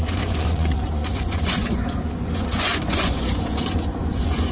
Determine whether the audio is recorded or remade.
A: remade